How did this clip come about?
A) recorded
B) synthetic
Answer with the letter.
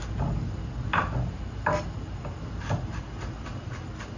A